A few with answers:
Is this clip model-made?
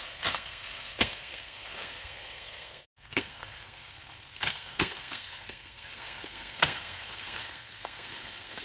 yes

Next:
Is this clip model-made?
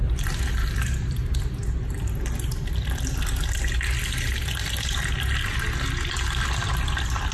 no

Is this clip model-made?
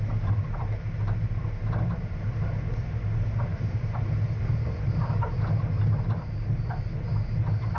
no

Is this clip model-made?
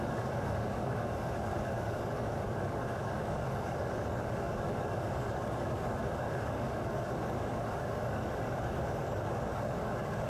yes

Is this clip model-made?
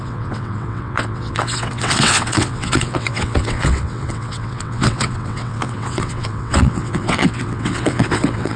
yes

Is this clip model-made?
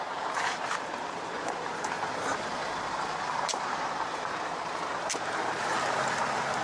yes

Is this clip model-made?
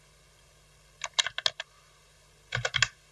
no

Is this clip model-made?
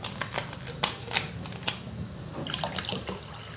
no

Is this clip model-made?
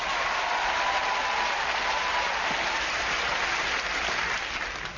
no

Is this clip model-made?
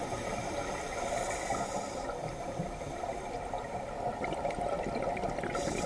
no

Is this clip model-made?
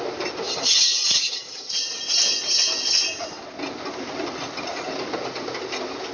no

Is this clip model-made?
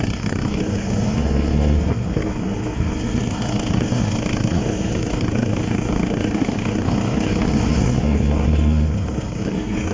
yes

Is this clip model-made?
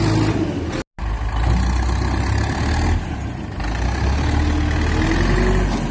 no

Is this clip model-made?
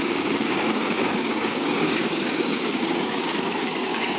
yes